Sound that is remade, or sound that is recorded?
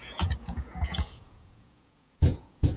remade